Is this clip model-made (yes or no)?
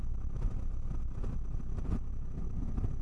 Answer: no